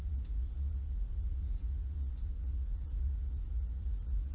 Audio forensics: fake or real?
fake